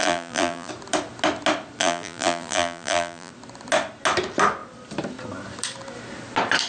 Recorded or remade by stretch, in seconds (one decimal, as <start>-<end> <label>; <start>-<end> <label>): 0.0-0.7 remade; 0.7-1.8 recorded; 1.8-3.3 remade; 3.3-6.7 recorded